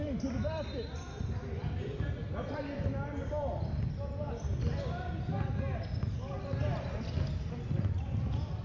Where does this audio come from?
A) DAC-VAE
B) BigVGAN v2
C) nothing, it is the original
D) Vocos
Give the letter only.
C